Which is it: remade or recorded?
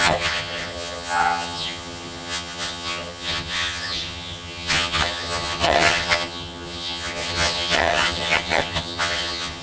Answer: remade